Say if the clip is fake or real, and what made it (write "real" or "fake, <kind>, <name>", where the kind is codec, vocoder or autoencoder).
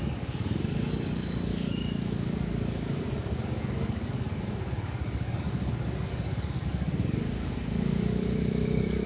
fake, codec, DAC